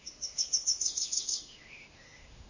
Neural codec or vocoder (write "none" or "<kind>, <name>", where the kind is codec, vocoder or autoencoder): autoencoder, DAC-VAE